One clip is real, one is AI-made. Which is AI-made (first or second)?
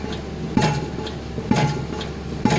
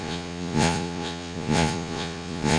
second